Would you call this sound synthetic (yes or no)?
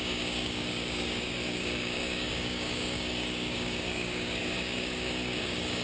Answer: yes